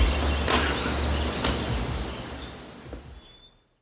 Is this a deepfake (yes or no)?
no